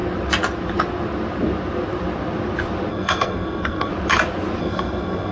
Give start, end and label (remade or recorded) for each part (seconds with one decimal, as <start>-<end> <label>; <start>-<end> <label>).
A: 0.0-2.9 recorded; 2.9-3.9 remade; 3.9-4.6 recorded; 4.6-5.3 remade